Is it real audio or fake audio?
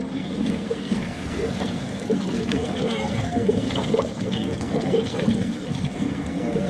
fake